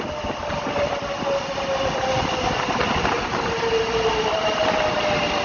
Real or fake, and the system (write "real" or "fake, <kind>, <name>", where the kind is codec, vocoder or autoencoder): real